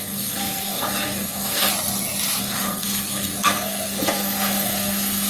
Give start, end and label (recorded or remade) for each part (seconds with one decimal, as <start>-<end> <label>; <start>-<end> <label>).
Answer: 0.0-1.7 remade; 1.7-2.4 recorded; 2.4-5.3 remade